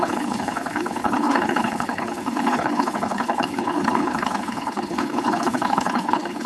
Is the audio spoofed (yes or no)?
yes